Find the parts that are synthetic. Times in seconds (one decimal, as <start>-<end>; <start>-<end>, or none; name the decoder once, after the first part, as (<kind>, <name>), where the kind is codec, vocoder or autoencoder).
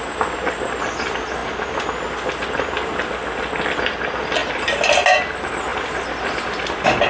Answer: none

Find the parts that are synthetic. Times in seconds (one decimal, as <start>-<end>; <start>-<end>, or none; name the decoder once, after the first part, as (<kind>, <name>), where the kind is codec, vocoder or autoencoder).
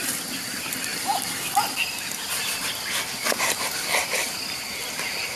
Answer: none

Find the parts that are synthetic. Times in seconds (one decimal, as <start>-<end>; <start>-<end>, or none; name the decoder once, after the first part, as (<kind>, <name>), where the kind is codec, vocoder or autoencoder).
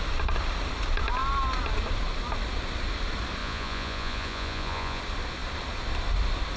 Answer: 3.4-5.0 (vocoder, Vocos)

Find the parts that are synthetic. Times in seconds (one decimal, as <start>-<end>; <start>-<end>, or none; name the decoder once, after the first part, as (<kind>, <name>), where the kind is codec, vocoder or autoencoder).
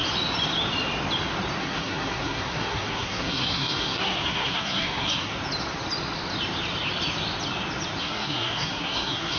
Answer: 1.6-5.3 (codec, SNAC); 8.0-9.4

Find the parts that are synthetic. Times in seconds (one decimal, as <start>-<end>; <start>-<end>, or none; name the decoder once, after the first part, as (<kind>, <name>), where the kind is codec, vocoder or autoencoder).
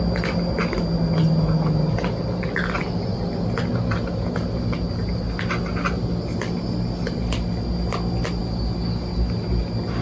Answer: none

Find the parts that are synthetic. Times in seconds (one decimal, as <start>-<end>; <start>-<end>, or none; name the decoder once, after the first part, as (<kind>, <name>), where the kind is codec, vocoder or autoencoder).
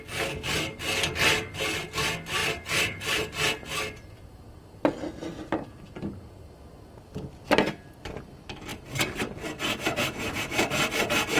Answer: 8.7-9.4 (vocoder, BigVGAN v2)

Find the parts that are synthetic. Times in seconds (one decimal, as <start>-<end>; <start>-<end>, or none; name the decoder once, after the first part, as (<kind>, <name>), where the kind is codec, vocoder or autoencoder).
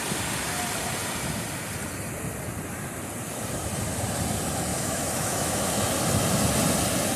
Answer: 4.7-5.7 (autoencoder, DAC-VAE)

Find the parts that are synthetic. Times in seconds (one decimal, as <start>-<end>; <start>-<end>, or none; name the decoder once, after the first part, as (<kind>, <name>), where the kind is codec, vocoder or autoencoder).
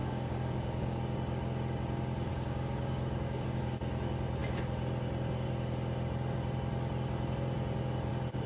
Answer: 0.0-1.0 (codec, DAC); 2.3-3.8